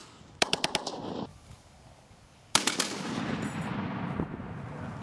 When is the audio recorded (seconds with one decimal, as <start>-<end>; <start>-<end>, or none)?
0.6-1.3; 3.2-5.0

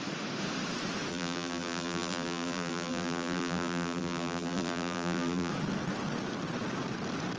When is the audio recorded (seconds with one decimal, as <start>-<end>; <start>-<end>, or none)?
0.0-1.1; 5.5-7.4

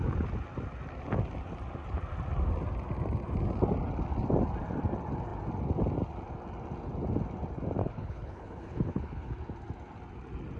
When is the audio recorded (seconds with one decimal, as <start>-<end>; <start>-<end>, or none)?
0.0-7.8; 9.3-10.6

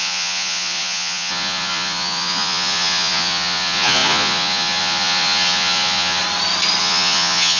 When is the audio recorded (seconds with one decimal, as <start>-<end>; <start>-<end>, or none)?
6.2-6.8

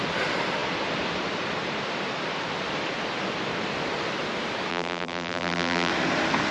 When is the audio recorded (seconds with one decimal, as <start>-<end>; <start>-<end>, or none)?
0.0-4.7; 5.9-6.5

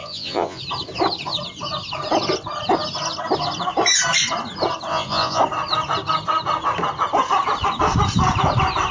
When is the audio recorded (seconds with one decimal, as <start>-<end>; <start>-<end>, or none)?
0.6-4.9; 5.4-8.9

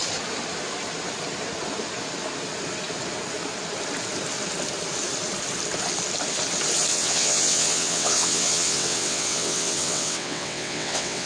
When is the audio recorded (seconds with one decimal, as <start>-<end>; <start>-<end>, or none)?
0.0-6.9

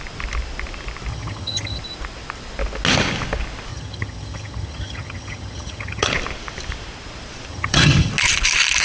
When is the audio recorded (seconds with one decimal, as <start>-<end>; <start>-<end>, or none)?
0.0-1.1; 1.8-3.7; 6.1-7.5; 8.1-8.8